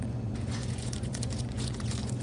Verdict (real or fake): fake